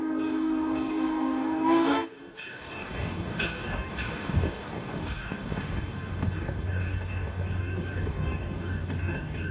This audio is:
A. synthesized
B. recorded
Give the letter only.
A